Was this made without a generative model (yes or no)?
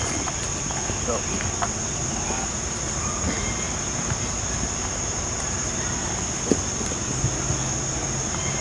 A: yes